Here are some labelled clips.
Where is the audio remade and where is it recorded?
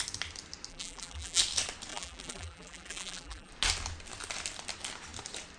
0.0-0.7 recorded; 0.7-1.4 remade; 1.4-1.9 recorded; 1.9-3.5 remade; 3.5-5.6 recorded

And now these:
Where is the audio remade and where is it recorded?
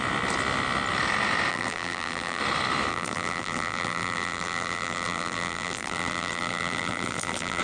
0.0-1.5 recorded; 1.5-2.4 remade; 2.4-2.9 recorded; 2.9-7.6 remade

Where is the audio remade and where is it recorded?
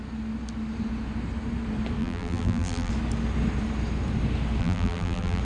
0.0-2.0 recorded; 2.0-2.9 remade; 2.9-4.6 recorded; 4.6-5.4 remade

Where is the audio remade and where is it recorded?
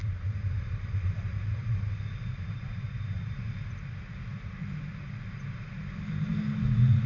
0.0-3.9 remade; 3.9-4.3 recorded; 4.3-6.3 remade; 6.3-7.1 recorded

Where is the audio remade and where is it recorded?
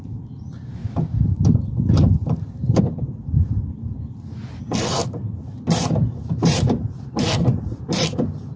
0.0-8.6 remade